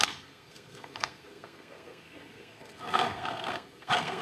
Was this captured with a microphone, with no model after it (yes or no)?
no